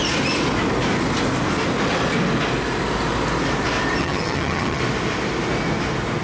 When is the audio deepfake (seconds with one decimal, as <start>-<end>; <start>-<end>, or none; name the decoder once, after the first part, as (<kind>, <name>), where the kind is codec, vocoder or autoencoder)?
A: 4.0-4.8 (vocoder, HiFi-GAN)